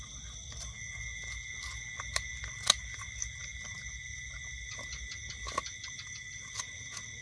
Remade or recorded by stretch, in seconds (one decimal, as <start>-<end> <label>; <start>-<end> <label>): 0.0-7.2 recorded